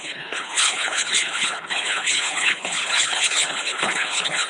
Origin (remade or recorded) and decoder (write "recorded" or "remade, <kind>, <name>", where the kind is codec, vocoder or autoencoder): remade, codec, HILCodec